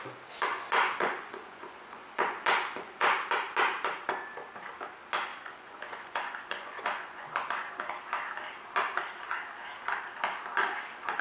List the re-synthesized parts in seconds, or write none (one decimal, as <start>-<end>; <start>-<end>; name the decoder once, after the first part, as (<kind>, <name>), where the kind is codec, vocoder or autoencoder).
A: 0.5-3.0 (vocoder, Vocos); 5.3-7.9